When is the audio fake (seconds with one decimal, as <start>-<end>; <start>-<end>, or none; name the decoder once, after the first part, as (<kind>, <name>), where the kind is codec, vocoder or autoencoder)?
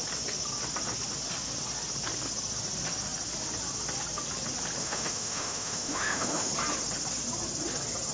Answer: 4.8-6.5 (autoencoder, DAC-VAE)